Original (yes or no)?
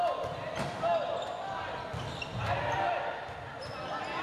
yes